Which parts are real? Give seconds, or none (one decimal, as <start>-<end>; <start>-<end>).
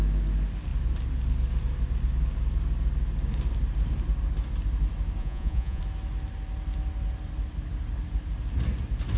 0.0-5.2; 5.8-9.2